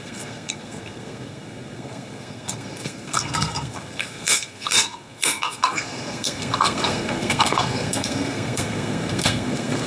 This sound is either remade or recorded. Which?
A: remade